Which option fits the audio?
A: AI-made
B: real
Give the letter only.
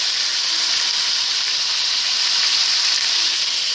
B